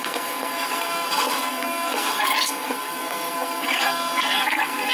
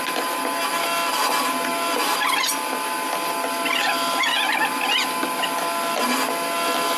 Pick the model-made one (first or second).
first